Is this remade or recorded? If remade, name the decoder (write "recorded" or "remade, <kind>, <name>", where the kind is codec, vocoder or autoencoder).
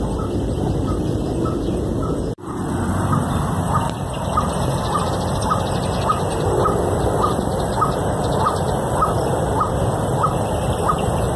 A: remade, vocoder, BigVGAN v2